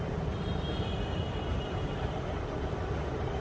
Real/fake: real